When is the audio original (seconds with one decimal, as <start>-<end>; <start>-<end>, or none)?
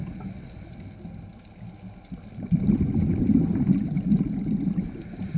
0.0-5.4